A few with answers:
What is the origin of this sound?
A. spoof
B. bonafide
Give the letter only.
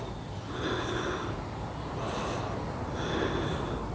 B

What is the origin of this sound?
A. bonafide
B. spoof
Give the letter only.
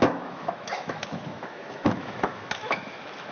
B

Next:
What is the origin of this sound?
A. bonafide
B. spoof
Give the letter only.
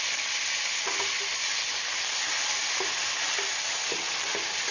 A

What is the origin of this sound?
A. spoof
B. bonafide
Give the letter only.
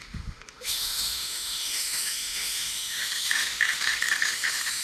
A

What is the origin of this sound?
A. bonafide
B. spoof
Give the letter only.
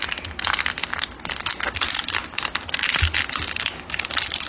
A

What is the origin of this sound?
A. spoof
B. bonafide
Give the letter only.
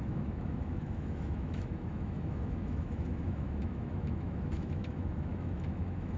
A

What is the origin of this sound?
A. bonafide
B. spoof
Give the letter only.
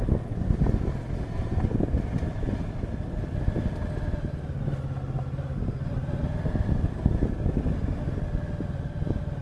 A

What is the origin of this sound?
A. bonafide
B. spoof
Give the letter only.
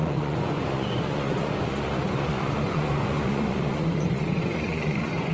B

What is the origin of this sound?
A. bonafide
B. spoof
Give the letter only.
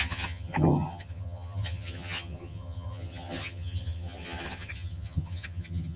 B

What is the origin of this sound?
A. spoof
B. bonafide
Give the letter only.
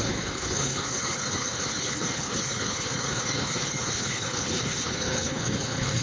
A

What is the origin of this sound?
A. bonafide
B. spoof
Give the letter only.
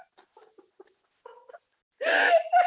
A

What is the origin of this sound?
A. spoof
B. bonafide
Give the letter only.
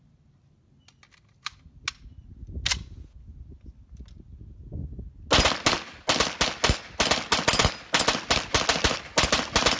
B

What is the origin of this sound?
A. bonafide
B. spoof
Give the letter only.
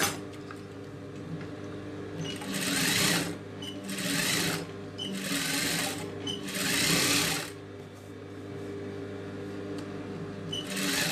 A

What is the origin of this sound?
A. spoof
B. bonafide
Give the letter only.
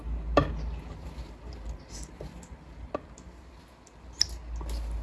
B